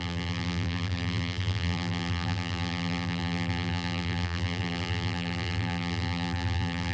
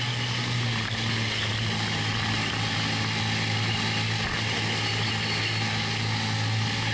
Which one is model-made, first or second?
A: first